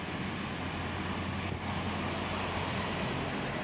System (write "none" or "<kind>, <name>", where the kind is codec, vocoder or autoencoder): none